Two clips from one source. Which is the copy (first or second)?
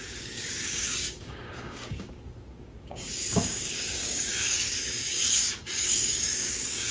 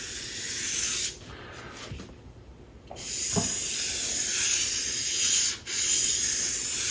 first